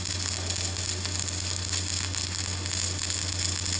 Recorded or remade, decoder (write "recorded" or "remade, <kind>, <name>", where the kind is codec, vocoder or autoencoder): recorded